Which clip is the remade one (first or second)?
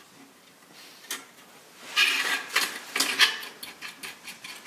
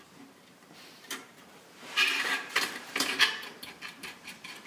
second